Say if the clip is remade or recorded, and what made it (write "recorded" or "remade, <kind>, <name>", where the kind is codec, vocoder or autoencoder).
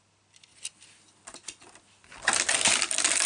recorded